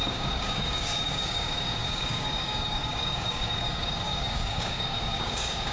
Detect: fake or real fake